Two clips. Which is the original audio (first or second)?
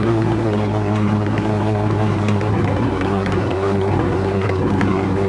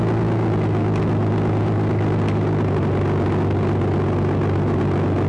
second